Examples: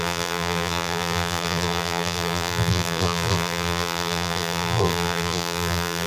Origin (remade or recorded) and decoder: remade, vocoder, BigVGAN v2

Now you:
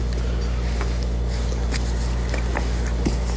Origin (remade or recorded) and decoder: recorded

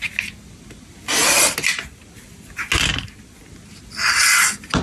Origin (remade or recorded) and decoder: recorded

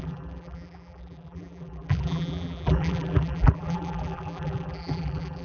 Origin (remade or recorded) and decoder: remade, vocoder, BigVGAN v2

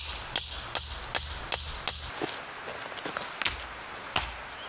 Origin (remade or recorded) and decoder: recorded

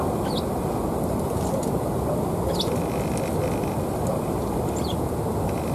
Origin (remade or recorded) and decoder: recorded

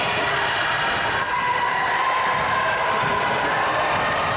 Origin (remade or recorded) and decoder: remade, vocoder, BigVGAN v2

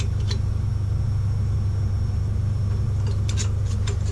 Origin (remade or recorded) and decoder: recorded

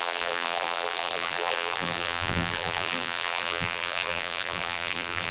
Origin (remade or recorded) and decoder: remade, vocoder, BigVGAN v2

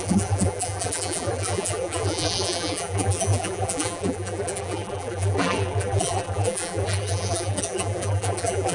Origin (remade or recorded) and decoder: remade, vocoder, BigVGAN v2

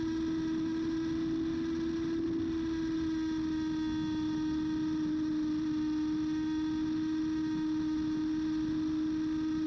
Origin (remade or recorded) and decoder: recorded